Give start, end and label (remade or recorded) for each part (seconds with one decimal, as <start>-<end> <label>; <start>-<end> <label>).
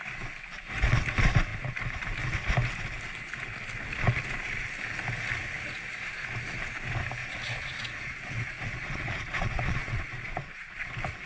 0.0-7.2 recorded; 7.2-10.9 remade; 10.9-11.3 recorded